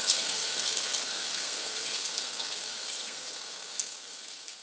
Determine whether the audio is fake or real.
fake